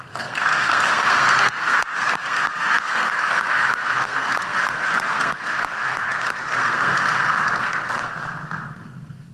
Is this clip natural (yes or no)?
no